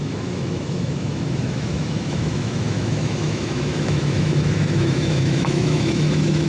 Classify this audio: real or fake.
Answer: fake